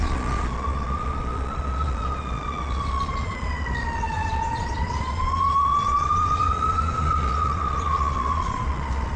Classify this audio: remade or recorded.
remade